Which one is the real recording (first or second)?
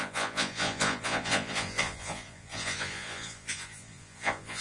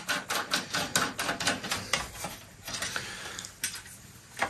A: second